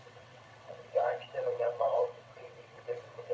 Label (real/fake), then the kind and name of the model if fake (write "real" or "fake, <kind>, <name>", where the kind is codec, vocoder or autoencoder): fake, vocoder, WaveNeXt